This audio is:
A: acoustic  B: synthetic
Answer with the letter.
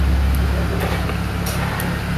A